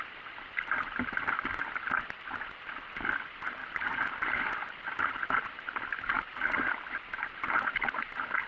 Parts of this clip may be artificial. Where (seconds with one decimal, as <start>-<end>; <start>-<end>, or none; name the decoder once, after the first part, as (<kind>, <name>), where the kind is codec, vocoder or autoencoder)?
1.6-2.7 (vocoder, BigVGAN v2); 3.6-8.0